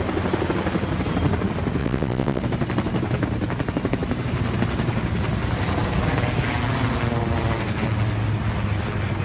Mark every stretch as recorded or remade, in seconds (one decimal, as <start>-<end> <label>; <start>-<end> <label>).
0.0-1.8 recorded; 1.8-2.4 remade; 2.4-9.2 recorded